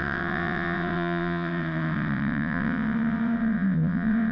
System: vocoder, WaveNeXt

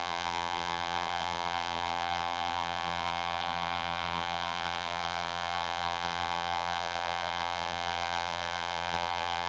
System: vocoder, BigVGAN v2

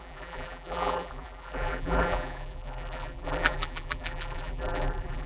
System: vocoder, BigVGAN v2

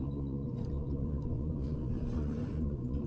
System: vocoder, Vocos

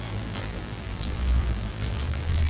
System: vocoder, BigVGAN v2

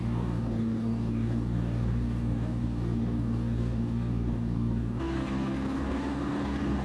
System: codec, DAC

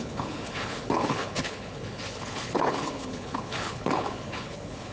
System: codec, HILCodec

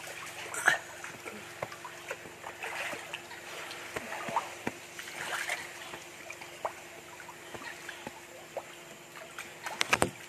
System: none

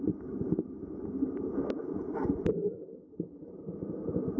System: none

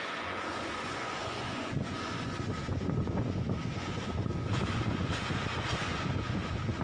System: vocoder, Vocos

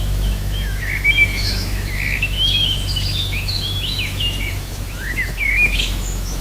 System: autoencoder, DAC-VAE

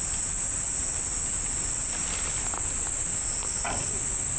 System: none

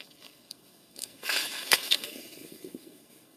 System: codec, SNAC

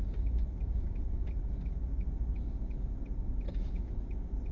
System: none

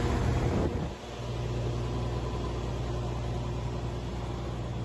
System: none